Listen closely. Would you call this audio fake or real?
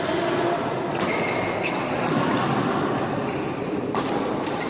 real